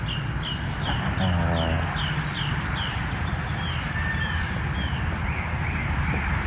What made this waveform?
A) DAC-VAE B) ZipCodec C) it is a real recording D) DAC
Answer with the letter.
C